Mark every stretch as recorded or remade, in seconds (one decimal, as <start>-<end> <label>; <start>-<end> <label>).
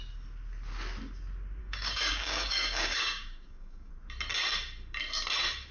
0.0-1.6 recorded; 1.6-3.9 remade; 3.9-5.7 recorded